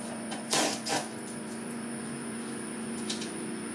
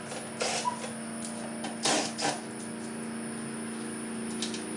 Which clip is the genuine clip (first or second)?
second